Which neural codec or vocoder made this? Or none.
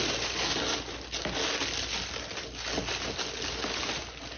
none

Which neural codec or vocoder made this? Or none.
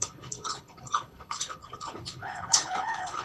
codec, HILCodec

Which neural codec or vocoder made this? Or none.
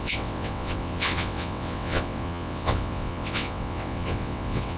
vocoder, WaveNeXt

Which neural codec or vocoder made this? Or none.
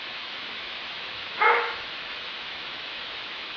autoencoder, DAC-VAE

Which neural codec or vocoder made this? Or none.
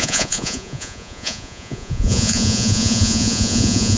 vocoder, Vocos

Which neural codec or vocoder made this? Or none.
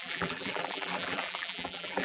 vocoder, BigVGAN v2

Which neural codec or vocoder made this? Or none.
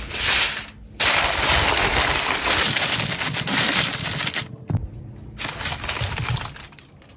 none